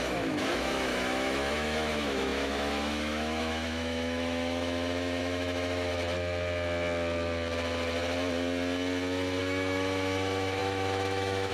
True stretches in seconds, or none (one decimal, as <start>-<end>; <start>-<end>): 5.9-9.4